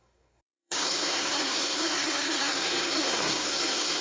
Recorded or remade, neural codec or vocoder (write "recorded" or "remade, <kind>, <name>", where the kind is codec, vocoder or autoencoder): remade, codec, SNAC